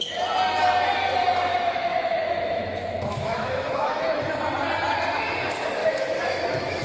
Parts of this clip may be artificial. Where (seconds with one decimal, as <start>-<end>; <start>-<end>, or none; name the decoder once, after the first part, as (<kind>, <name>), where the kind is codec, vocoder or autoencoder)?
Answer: 1.5-4.2 (autoencoder, DAC-VAE); 5.8-6.8